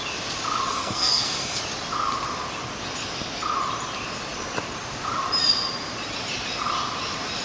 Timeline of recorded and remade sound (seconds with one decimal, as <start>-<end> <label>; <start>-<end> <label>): 0.0-0.7 recorded; 0.7-1.6 remade; 1.6-7.4 recorded